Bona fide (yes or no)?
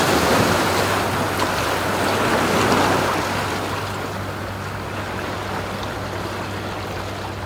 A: yes